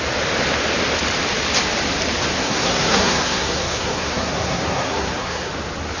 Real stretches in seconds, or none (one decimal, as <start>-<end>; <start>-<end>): 0.0-2.4; 5.5-6.0